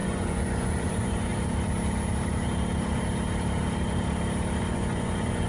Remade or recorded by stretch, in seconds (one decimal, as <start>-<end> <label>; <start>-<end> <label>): 0.0-1.3 remade; 1.3-4.6 recorded; 4.6-5.5 remade